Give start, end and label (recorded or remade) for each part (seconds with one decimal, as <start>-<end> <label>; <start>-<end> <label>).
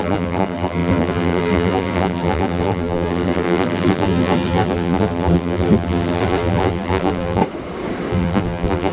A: 0.0-7.4 remade; 7.4-8.1 recorded; 8.1-8.9 remade